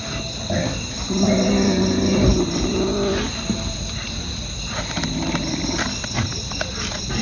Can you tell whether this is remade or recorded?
recorded